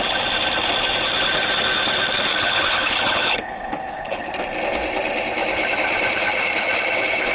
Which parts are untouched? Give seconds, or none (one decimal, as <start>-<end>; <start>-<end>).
0.0-2.3; 4.3-7.3